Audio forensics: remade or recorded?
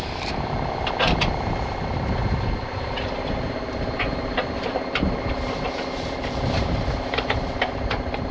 remade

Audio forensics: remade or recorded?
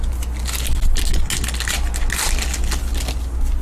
recorded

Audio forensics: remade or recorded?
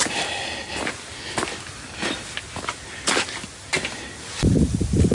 recorded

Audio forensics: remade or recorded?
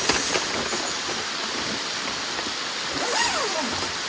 recorded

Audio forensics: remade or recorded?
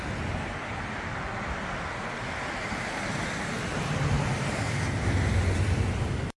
recorded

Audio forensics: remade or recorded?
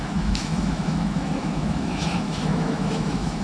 remade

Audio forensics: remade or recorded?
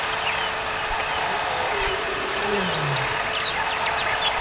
remade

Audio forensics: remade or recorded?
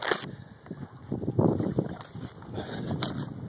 recorded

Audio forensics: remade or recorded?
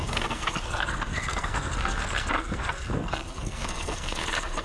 remade